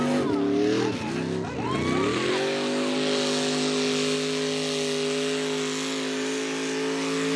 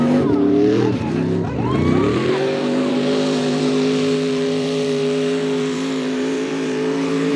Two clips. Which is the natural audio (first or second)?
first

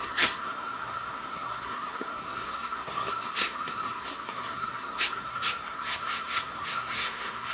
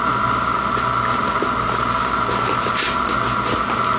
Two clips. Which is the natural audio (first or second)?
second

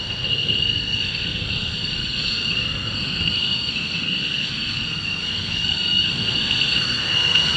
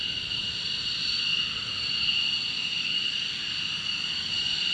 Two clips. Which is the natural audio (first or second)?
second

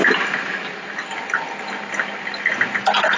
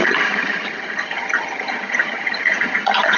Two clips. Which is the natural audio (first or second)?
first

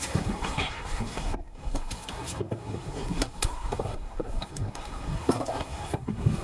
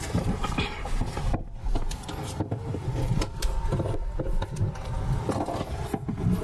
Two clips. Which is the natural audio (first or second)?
second